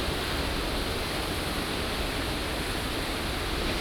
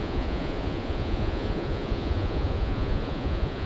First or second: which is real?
first